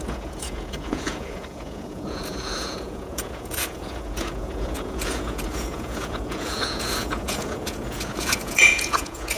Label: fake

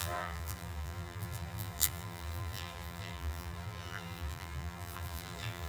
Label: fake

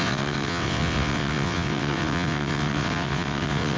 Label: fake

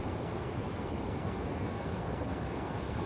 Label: fake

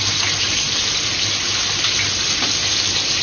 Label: real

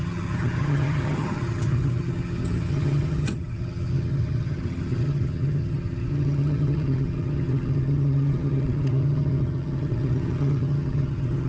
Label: fake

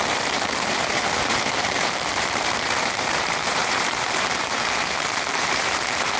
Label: fake